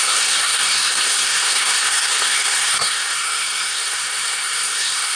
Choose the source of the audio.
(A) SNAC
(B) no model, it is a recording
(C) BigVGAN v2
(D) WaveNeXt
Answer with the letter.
A